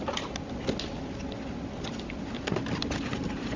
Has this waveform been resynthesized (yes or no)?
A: no